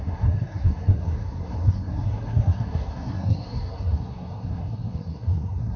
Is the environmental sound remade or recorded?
remade